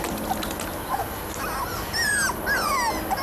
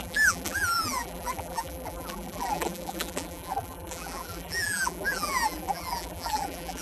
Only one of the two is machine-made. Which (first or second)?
second